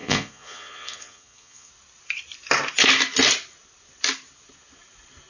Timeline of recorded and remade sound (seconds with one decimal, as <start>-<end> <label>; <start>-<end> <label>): 0.0-1.7 remade; 1.7-5.3 recorded